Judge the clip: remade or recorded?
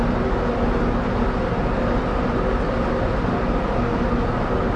recorded